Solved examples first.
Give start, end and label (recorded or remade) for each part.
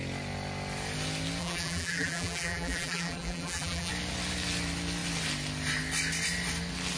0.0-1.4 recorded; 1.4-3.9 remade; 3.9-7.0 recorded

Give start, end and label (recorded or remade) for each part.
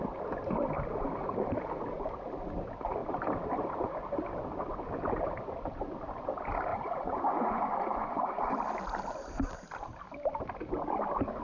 0.0-6.7 recorded; 6.7-8.5 remade; 8.5-11.4 recorded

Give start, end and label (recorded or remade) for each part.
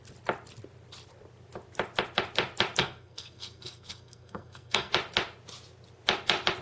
0.0-2.8 recorded; 2.8-4.9 remade; 4.9-6.6 recorded